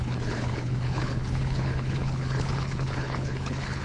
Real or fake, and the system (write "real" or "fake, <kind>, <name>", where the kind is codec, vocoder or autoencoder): fake, codec, HILCodec